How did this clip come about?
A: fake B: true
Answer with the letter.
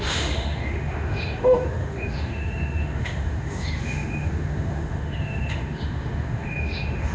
A